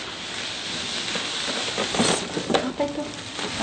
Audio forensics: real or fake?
real